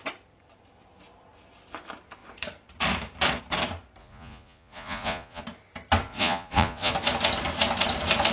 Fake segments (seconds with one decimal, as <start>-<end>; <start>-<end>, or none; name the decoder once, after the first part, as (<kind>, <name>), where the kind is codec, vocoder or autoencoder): 4.0-5.4 (vocoder, Vocos); 6.1-6.9